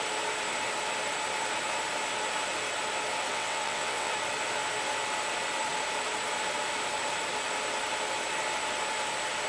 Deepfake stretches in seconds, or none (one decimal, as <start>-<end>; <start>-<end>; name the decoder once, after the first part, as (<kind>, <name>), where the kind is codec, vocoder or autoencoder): 3.3-4.1 (vocoder, WaveNeXt)